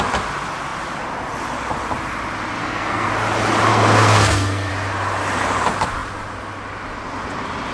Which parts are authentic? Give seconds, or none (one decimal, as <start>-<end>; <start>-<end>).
0.0-2.6; 3.1-3.7; 4.7-7.7